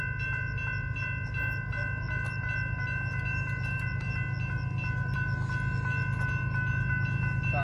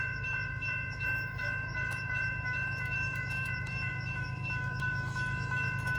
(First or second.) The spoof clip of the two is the second